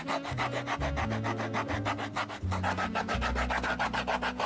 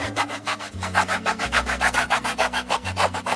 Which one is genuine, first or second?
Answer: first